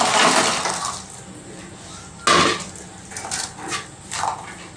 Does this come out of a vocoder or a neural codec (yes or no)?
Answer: no